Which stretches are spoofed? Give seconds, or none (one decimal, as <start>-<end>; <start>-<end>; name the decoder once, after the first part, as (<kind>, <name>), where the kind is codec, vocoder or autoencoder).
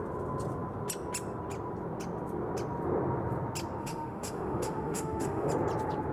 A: 3.8-5.5 (autoencoder, DAC-VAE)